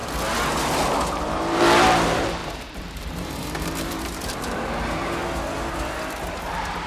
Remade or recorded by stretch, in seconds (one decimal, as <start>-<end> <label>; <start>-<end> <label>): 0.0-1.2 recorded; 1.2-5.2 remade; 5.2-6.3 recorded; 6.3-6.9 remade